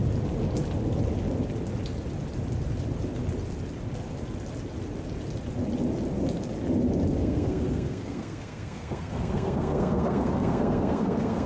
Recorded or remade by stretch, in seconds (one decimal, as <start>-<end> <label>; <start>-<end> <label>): 0.0-7.2 recorded; 7.2-11.5 remade